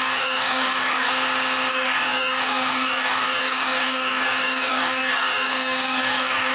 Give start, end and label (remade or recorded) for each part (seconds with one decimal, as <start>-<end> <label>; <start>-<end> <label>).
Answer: 0.0-1.1 remade; 1.1-1.7 recorded; 1.7-6.5 remade